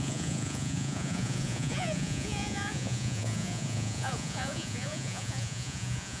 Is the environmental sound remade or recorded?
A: remade